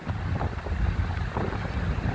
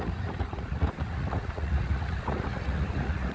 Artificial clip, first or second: second